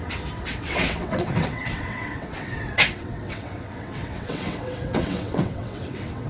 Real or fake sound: fake